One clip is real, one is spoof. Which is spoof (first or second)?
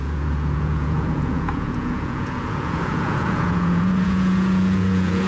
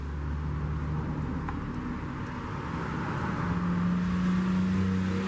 first